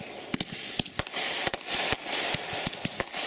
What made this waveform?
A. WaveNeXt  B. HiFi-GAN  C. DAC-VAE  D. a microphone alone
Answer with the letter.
D